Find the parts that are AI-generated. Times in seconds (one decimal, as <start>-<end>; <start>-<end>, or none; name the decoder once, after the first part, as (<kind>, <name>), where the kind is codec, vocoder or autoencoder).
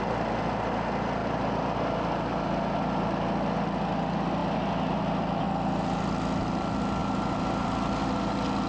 none